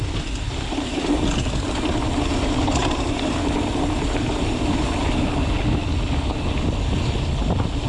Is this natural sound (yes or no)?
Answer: yes